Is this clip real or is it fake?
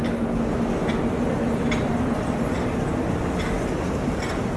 real